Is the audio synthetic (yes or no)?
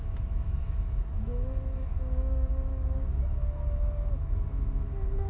yes